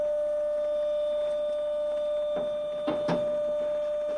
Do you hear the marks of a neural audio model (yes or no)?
no